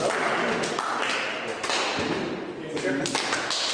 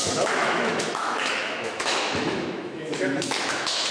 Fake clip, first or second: second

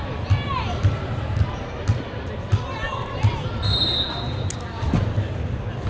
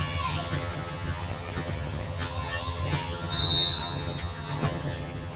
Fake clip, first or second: second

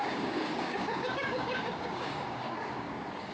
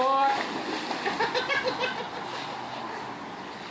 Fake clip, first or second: first